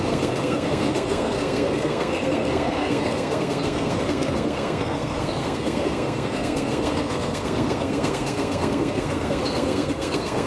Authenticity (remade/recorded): remade